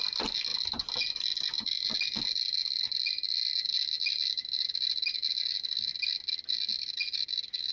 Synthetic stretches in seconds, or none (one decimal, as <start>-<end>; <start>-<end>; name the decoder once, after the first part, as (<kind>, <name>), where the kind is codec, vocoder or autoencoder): none